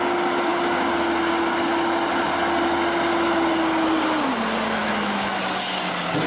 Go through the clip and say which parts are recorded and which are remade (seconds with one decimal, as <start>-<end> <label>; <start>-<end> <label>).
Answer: 0.0-4.8 recorded; 4.8-5.4 remade; 5.4-6.3 recorded

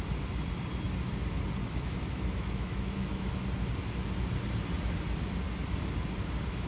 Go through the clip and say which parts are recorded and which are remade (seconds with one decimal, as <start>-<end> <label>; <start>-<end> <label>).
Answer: 0.0-1.6 recorded; 1.6-3.3 remade; 3.3-6.7 recorded

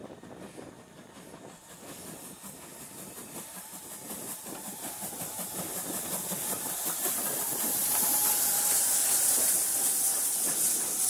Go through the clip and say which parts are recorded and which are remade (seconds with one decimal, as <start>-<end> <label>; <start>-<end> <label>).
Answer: 0.0-11.1 recorded

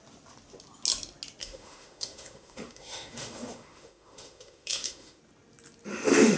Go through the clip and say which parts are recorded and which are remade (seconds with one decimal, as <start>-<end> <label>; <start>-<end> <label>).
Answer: 0.0-1.4 recorded; 1.4-5.2 remade; 5.2-5.9 recorded; 5.9-6.4 remade

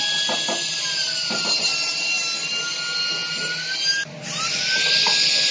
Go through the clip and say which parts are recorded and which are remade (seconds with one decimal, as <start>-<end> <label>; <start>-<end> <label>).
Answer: 0.0-5.5 recorded

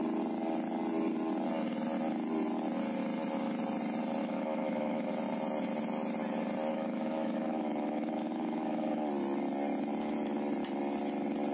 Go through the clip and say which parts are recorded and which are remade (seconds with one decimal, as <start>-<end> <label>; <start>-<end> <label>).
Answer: 0.0-4.2 recorded; 4.2-5.1 remade; 5.1-6.7 recorded; 6.7-9.1 remade; 9.1-11.5 recorded